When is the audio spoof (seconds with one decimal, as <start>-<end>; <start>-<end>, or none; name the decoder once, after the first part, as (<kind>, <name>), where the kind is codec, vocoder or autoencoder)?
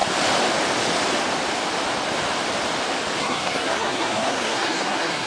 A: 3.2-5.3 (codec, SNAC)